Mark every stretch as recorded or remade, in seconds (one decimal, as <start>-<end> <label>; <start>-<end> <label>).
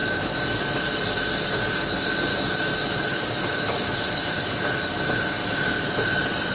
0.0-0.6 remade; 0.6-2.3 recorded; 2.3-4.7 remade; 4.7-6.5 recorded